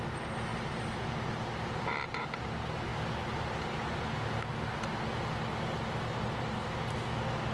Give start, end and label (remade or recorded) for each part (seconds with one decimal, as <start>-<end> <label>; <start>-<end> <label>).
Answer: 0.0-0.5 recorded; 0.5-2.5 remade; 2.5-7.5 recorded